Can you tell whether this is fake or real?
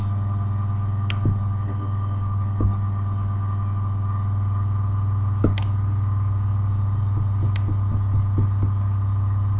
real